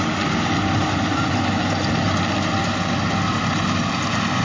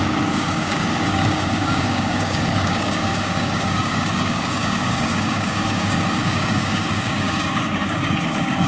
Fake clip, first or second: second